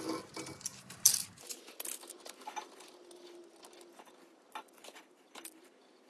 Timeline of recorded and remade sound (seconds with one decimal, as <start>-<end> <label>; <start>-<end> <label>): 0.0-6.1 recorded